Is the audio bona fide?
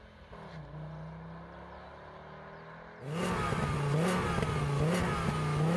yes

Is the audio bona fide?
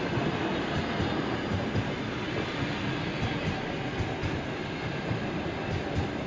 yes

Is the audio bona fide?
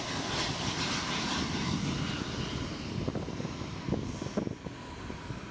yes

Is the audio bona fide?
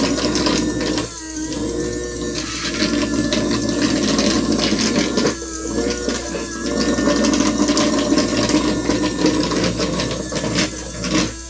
yes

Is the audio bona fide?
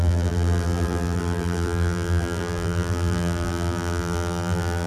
no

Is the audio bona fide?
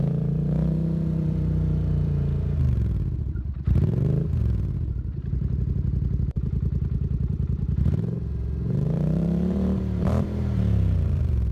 no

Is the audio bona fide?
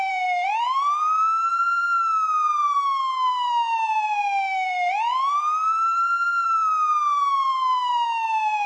no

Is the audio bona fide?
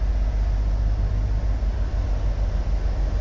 yes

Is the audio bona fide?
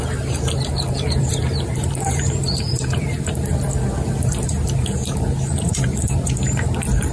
no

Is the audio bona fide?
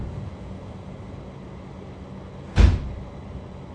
yes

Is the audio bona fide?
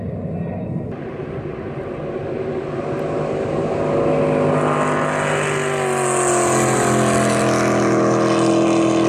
yes